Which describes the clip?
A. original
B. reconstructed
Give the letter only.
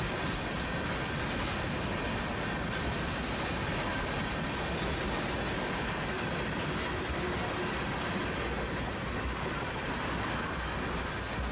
A